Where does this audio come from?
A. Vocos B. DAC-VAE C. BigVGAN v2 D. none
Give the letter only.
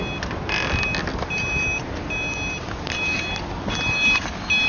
D